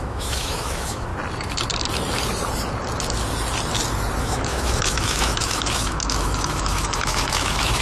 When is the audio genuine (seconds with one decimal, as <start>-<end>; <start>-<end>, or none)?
1.1-4.2